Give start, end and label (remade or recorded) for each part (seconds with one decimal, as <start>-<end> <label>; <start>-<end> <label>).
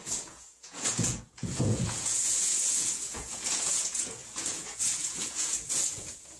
0.0-6.4 remade